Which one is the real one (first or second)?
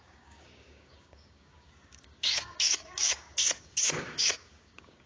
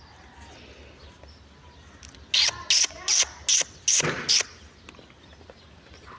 second